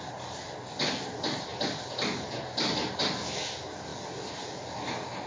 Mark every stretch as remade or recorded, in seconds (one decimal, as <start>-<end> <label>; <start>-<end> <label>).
0.0-5.3 recorded